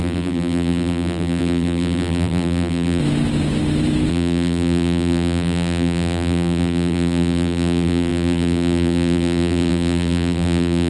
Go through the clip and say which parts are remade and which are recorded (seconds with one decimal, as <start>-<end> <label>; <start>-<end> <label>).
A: 0.0-3.0 remade; 3.0-4.1 recorded; 4.1-10.9 remade